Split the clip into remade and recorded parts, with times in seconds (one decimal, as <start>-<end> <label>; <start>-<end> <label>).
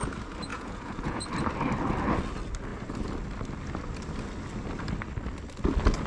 0.0-0.5 recorded; 0.5-1.2 remade; 1.2-6.1 recorded